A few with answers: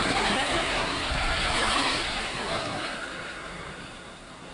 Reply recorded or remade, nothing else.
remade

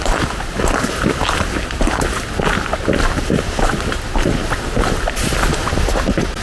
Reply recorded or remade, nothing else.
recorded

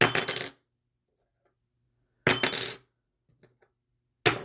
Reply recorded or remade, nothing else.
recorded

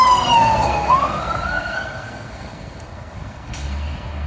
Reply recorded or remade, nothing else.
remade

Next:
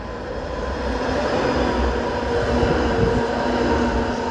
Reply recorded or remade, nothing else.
recorded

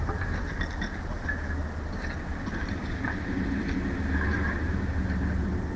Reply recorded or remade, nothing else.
recorded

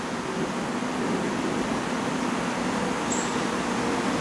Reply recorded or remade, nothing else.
recorded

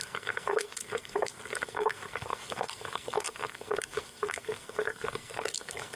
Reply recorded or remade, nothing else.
remade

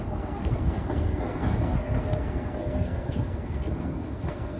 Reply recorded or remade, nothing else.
remade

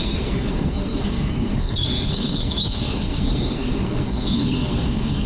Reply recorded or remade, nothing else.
remade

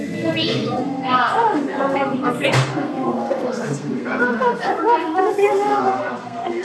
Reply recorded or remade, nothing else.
remade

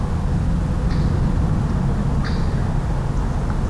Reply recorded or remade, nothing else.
recorded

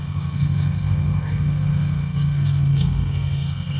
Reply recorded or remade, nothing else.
remade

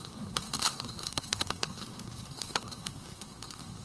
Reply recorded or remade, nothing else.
remade